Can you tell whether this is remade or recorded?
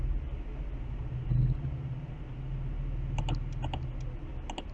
recorded